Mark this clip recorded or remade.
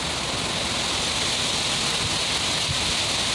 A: recorded